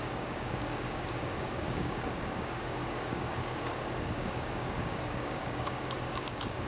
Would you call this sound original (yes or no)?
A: no